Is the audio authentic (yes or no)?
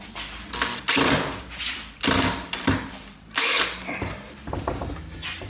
yes